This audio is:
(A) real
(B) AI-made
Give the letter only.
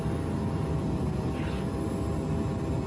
A